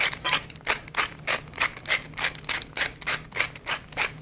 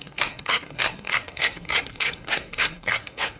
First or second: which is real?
first